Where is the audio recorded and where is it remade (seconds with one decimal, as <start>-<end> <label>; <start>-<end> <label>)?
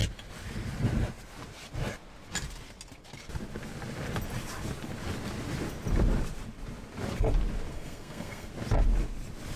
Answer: 0.0-7.7 recorded; 7.7-8.5 remade; 8.5-9.6 recorded